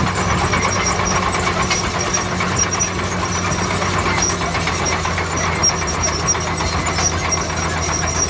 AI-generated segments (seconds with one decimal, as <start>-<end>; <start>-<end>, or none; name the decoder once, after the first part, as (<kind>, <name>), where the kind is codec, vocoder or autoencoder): none